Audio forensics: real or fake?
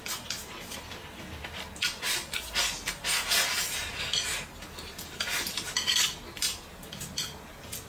real